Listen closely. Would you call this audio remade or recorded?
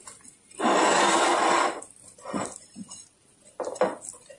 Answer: recorded